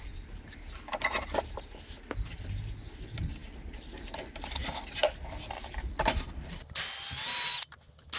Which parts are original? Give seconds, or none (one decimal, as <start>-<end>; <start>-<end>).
0.0-8.2